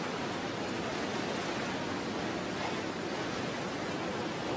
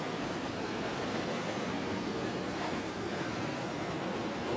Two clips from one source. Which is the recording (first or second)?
first